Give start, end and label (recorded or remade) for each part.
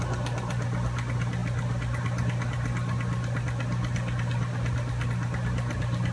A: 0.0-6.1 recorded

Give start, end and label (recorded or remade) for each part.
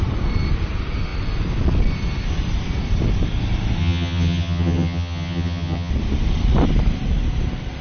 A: 0.0-3.8 recorded; 3.8-5.9 remade; 5.9-7.8 recorded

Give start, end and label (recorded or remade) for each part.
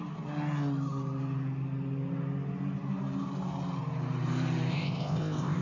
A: 0.0-4.7 recorded; 4.7-5.6 remade